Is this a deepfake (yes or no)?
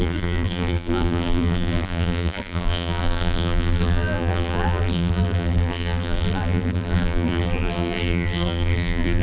yes